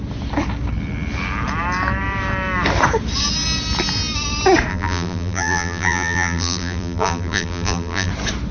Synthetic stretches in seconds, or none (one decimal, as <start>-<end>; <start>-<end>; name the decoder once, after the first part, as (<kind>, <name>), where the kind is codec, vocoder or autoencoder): 4.7-8.1 (vocoder, BigVGAN v2)